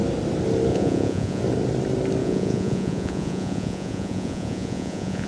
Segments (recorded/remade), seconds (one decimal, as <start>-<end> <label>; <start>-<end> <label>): 0.0-0.7 recorded; 0.7-1.4 remade; 1.4-2.2 recorded; 2.2-5.3 remade